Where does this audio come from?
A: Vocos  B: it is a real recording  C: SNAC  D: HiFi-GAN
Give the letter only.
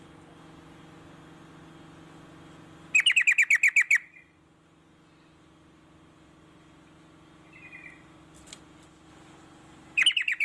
B